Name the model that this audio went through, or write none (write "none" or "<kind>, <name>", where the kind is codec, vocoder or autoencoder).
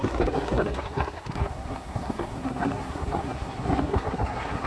codec, SNAC